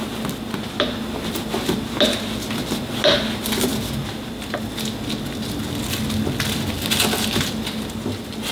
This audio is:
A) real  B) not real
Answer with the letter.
A